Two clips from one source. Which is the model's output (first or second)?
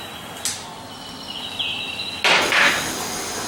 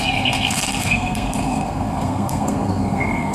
second